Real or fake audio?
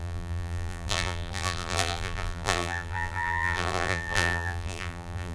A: fake